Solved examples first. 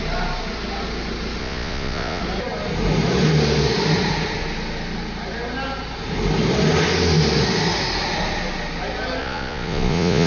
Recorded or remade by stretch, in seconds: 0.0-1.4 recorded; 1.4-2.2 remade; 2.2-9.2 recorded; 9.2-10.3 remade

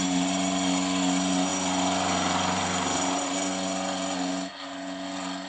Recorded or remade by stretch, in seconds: 0.0-5.5 recorded

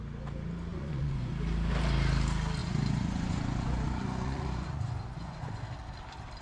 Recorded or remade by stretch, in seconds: 0.0-0.7 recorded; 0.7-1.3 remade; 1.3-2.6 recorded; 2.6-5.6 remade; 5.6-6.4 recorded

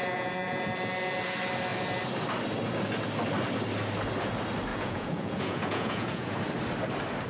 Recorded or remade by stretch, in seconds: 0.0-0.6 remade; 0.6-4.7 recorded; 4.7-6.4 remade; 6.4-7.3 recorded

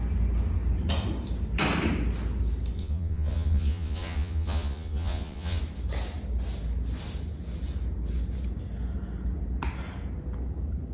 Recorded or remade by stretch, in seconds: 0.0-2.8 recorded; 2.8-5.6 remade; 5.6-10.9 recorded

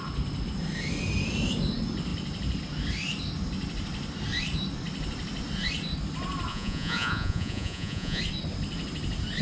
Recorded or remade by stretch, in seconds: 0.0-6.5 recorded; 6.5-8.2 remade; 8.2-9.4 recorded

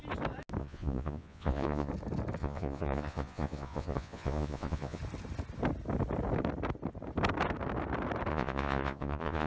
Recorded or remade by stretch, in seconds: 0.0-0.6 recorded; 0.6-1.9 remade; 1.9-2.4 recorded; 2.4-5.0 remade; 5.0-8.3 recorded; 8.3-9.5 remade

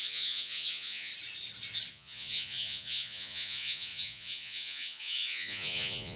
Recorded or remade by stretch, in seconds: 0.0-1.1 remade; 1.1-1.9 recorded; 1.9-6.2 remade